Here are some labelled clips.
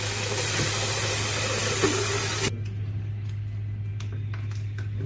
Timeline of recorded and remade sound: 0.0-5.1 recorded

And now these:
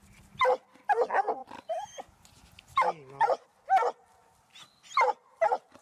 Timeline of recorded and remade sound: 0.0-5.8 recorded